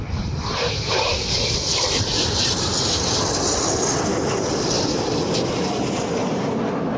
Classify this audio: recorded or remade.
recorded